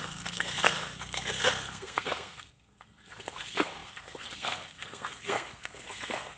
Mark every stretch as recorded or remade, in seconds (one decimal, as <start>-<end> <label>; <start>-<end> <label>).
0.0-6.4 remade